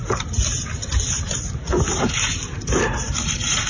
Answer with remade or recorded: recorded